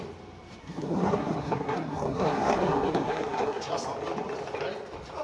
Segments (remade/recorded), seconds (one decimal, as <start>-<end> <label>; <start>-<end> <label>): 0.0-0.6 recorded; 0.6-3.7 remade; 3.7-5.2 recorded